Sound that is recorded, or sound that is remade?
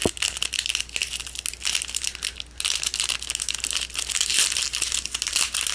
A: recorded